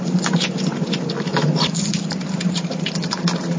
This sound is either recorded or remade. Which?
recorded